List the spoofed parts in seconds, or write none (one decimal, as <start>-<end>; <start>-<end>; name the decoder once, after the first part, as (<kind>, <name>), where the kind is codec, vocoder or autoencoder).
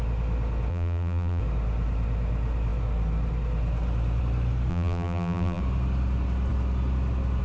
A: 0.7-1.4 (vocoder, BigVGAN v2); 4.7-5.6